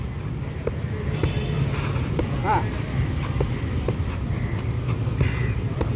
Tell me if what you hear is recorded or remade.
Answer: recorded